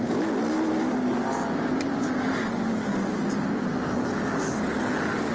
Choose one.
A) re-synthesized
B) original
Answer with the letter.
B